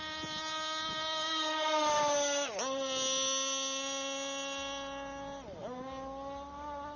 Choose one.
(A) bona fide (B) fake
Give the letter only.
A